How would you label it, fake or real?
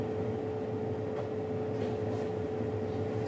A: real